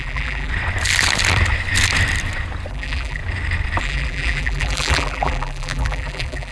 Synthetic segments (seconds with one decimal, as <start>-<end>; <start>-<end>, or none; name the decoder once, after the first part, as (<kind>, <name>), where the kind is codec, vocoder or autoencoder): 0.0-0.5 (vocoder, BigVGAN v2); 2.7-3.2; 3.8-6.5